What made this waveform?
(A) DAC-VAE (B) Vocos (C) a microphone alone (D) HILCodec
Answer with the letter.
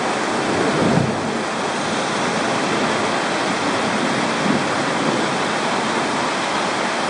C